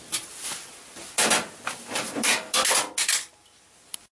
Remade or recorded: recorded